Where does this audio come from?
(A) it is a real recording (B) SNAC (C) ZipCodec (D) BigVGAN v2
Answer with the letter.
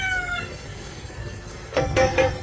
B